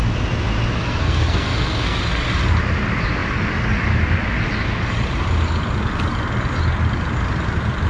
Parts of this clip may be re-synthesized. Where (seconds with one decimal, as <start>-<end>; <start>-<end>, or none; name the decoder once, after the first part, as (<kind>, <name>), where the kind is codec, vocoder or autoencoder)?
0.8-2.0 (codec, SNAC)